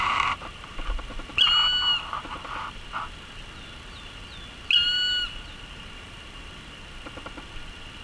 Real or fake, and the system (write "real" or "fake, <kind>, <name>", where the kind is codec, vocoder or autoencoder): real